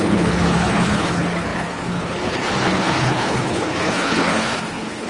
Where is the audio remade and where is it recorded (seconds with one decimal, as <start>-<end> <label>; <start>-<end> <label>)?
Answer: 0.0-5.1 remade